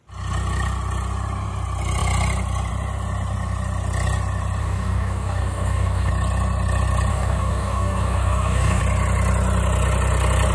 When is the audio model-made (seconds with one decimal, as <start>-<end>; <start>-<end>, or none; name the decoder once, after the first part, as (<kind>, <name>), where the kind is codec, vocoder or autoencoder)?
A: 4.6-6.1 (codec, DAC); 7.1-8.8